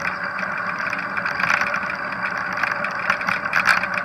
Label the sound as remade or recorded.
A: recorded